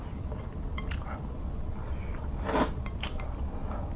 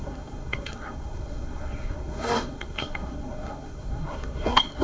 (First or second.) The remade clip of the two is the second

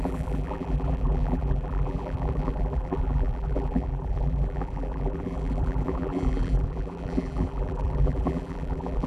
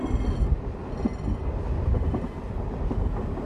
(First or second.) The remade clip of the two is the first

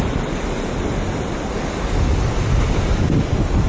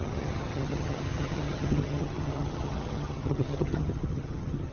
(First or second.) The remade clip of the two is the second